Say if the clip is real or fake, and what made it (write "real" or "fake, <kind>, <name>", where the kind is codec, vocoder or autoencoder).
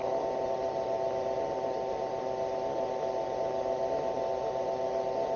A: real